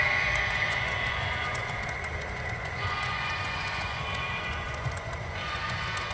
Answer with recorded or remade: remade